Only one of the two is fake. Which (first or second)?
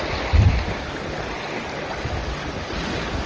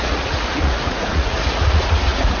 second